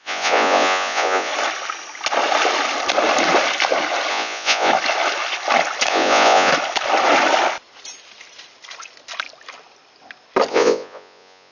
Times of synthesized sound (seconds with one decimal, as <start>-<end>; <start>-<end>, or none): 0.0-1.3; 4.1-4.7; 5.9-6.5; 10.5-11.5